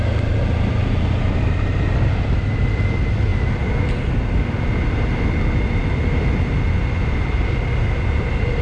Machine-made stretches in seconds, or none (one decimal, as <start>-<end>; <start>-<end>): none

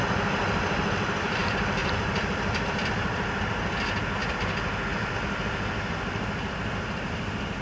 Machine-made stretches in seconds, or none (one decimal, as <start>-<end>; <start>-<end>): 1.8-2.8; 4.2-5.1

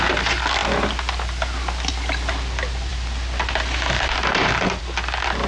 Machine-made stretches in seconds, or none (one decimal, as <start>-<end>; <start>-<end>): none

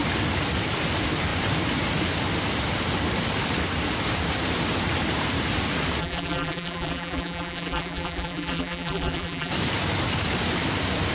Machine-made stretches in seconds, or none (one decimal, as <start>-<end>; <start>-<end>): 6.0-9.5

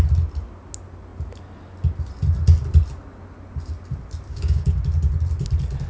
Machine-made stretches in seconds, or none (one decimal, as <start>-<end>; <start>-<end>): 4.3-4.8

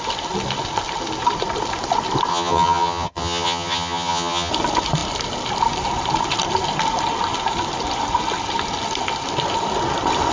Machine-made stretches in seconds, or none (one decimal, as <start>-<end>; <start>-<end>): 2.3-4.5

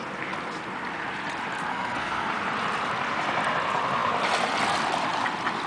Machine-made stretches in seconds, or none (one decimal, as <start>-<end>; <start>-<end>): 1.7-2.3

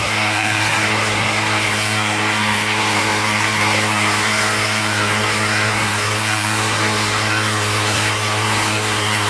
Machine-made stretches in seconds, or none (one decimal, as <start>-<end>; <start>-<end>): 0.0-9.3